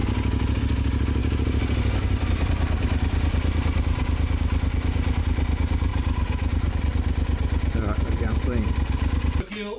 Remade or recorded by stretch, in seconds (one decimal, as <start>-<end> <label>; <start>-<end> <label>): 0.0-5.9 recorded; 5.9-6.8 remade; 6.8-9.8 recorded

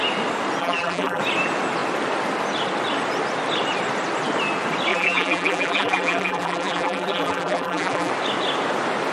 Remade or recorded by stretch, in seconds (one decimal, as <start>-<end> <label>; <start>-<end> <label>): 0.0-0.6 recorded; 0.6-1.2 remade; 1.2-4.9 recorded; 4.9-8.1 remade; 8.1-9.1 recorded